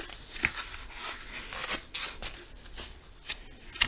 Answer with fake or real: real